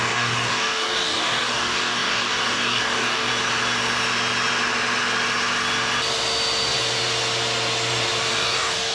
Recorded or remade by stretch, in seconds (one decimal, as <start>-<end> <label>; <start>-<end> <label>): 0.0-3.3 remade; 3.3-8.3 recorded; 8.3-8.9 remade